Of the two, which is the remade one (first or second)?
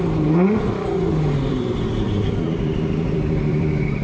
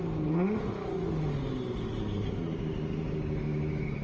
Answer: first